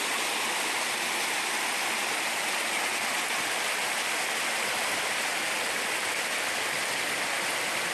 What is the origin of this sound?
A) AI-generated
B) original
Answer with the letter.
B